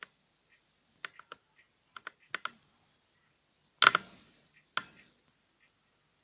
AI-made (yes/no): no